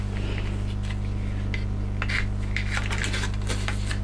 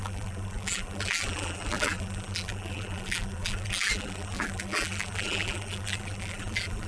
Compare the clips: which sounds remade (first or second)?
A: second